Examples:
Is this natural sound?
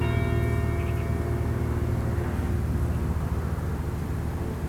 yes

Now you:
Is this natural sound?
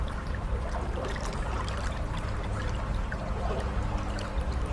yes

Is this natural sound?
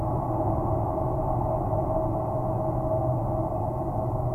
yes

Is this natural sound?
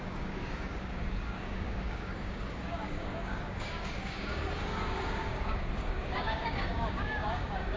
no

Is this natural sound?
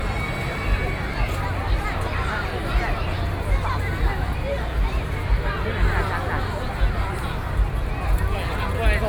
yes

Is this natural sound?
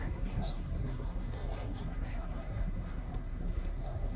no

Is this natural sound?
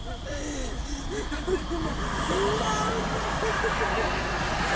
yes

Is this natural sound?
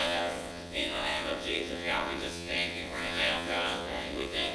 no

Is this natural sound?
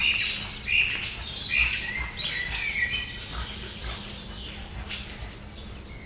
yes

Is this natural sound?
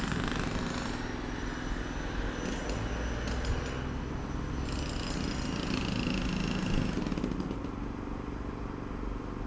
yes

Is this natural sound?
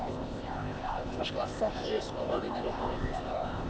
no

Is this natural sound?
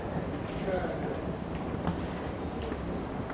yes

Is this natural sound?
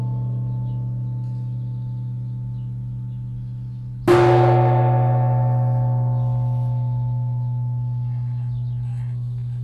yes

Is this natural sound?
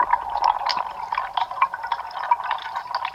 yes